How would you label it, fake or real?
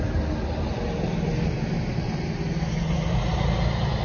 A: real